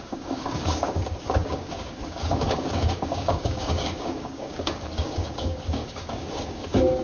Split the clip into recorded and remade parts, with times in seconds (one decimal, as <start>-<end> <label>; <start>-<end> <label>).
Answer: 0.0-7.0 remade